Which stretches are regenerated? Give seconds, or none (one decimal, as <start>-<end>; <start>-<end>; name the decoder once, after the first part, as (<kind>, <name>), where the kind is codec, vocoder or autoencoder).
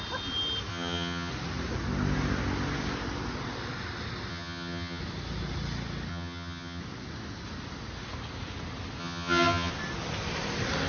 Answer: 0.7-1.3 (vocoder, HiFi-GAN); 4.3-5.0; 6.1-6.8; 9.0-9.7